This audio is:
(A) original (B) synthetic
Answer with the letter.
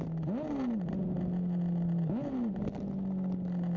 A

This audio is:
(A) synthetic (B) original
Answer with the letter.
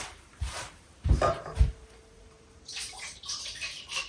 A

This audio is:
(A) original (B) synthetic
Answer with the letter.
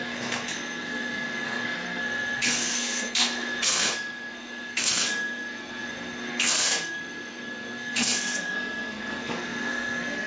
B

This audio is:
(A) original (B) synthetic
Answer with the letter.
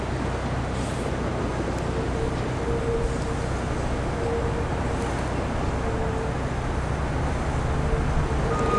A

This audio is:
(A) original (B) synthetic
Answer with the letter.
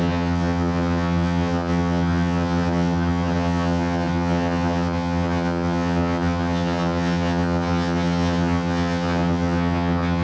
B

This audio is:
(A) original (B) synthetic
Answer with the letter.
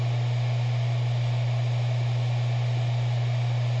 A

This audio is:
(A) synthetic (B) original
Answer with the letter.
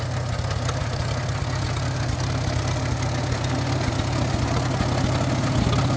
B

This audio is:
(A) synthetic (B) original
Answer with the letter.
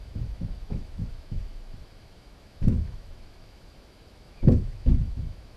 A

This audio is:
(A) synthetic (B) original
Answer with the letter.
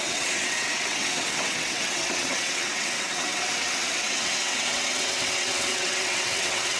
A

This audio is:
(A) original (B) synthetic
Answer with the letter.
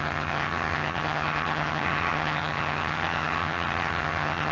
B